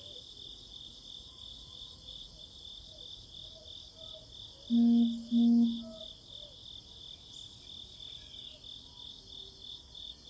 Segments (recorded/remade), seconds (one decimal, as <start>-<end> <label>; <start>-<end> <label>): 0.0-0.5 recorded; 0.5-2.4 remade; 2.4-10.3 recorded